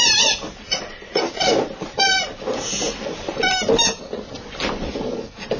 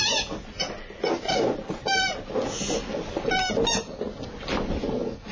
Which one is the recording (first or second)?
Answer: second